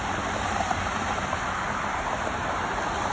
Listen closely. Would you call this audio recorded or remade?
recorded